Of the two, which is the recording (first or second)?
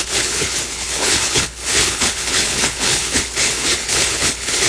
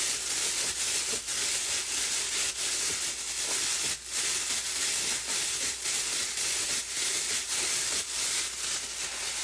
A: second